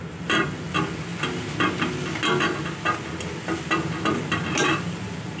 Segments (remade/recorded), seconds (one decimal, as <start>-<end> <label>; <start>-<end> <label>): 0.0-5.4 recorded